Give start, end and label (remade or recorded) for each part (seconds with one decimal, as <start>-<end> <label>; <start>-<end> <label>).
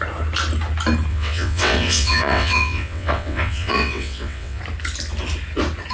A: 0.0-1.1 recorded; 1.1-4.6 remade; 4.6-5.9 recorded